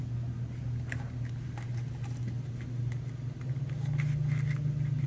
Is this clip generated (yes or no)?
no